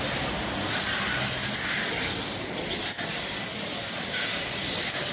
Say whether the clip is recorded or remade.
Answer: recorded